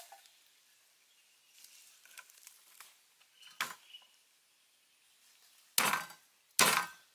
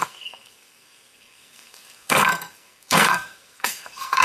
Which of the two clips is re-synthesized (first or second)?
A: second